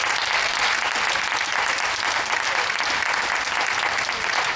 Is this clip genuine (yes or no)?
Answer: yes